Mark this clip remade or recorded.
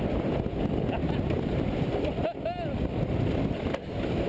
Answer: recorded